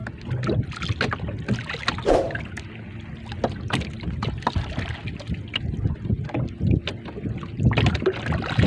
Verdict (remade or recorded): recorded